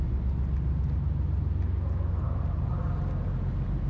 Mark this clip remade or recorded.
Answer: recorded